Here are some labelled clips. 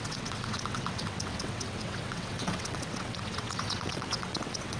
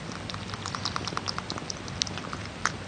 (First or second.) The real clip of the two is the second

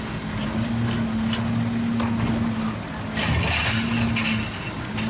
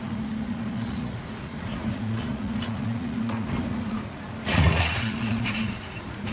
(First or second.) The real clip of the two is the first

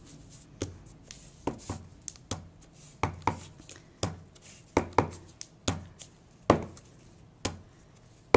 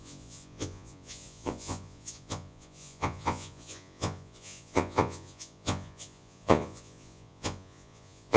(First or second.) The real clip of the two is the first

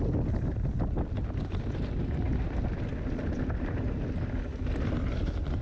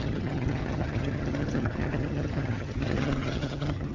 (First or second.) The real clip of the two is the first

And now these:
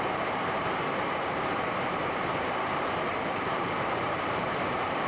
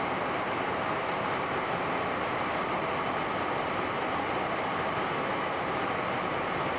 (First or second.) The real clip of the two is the second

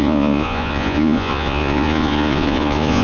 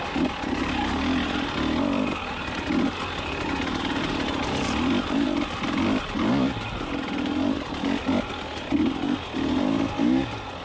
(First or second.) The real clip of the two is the second